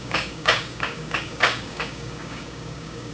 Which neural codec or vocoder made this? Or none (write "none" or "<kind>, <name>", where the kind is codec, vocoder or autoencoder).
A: codec, DAC